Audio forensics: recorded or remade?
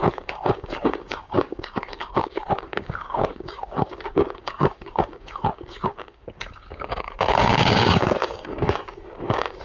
remade